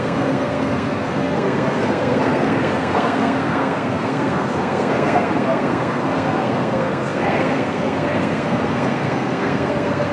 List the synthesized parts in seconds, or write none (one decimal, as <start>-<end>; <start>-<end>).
0.0-10.1